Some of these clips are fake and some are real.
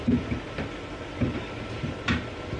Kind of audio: real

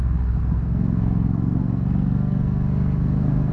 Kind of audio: fake